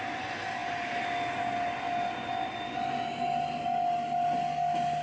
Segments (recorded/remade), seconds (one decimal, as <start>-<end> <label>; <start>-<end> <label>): 0.0-5.0 recorded